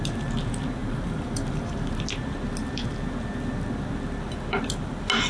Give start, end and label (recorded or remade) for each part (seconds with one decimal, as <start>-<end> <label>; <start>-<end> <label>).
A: 0.0-0.8 recorded; 0.8-1.9 remade; 1.9-5.3 recorded